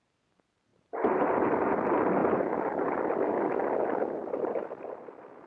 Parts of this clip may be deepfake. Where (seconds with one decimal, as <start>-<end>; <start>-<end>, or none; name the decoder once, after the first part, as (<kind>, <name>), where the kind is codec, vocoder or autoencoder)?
2.2-3.0 (vocoder, BigVGAN v2); 4.2-4.8